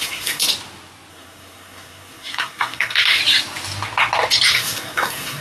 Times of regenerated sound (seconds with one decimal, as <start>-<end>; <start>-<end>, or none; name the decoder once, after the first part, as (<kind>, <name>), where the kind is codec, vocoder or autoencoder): 0.0-0.5 (codec, SNAC); 1.1-3.2; 4.5-5.4